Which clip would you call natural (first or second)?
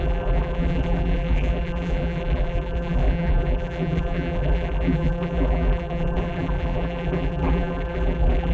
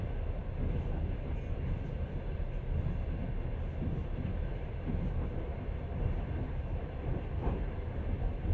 second